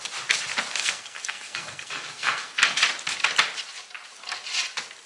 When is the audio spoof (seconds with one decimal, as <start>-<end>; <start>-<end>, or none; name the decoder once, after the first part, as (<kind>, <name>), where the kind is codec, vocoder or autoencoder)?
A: 0.8-2.8 (codec, SNAC)